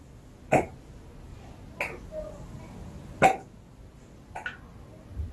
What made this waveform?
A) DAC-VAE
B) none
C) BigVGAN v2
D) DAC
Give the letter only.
B